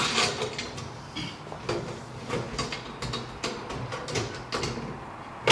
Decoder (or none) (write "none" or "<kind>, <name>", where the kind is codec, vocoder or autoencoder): none